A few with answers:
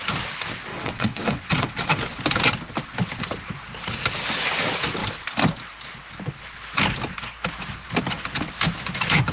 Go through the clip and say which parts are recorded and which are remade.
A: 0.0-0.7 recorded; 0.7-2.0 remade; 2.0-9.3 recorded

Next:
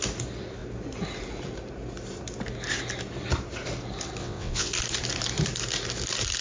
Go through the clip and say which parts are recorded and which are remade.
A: 0.0-4.2 recorded; 4.2-4.7 remade; 4.7-6.4 recorded